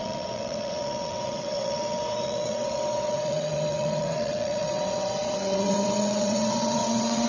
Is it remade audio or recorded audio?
remade